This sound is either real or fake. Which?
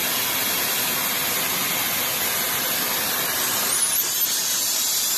real